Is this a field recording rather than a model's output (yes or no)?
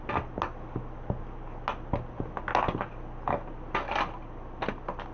yes